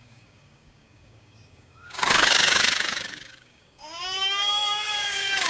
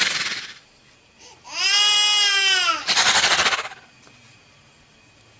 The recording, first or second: second